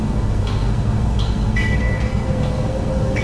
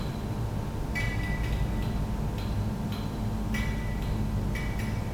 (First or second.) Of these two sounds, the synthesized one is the first